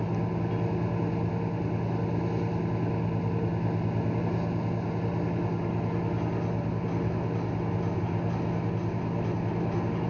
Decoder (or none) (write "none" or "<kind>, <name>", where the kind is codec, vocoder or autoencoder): none